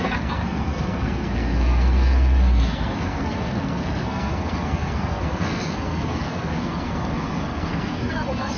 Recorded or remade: remade